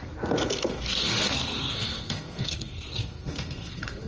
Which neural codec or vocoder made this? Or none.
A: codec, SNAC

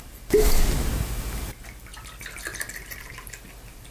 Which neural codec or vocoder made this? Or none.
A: none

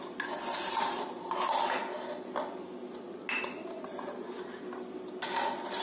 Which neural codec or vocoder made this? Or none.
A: none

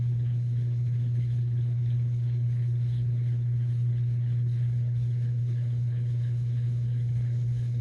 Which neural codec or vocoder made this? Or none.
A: codec, HILCodec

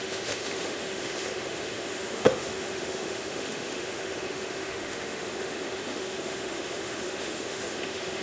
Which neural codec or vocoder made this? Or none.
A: autoencoder, DAC-VAE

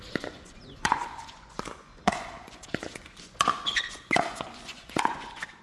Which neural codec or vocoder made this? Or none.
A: vocoder, Vocos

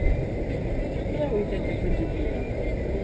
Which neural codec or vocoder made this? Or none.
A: none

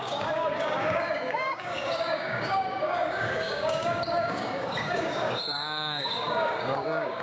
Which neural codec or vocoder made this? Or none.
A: codec, DAC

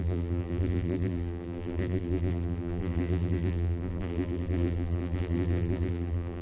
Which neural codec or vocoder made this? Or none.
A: vocoder, BigVGAN v2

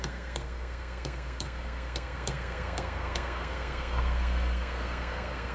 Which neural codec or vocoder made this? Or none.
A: codec, SNAC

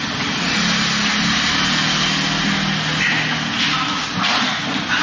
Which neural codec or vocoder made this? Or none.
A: none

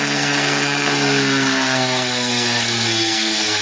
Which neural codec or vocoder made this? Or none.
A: codec, SNAC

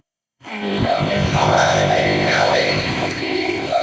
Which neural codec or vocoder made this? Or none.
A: codec, ZipCodec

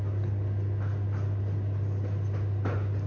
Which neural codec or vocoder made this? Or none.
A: none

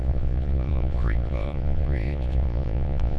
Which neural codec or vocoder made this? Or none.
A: vocoder, Vocos